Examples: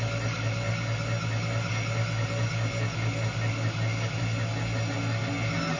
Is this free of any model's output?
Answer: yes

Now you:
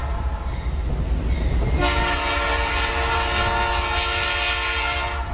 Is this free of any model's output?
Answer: yes